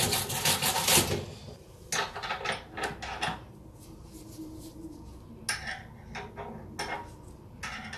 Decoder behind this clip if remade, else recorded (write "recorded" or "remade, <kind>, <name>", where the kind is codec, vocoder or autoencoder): recorded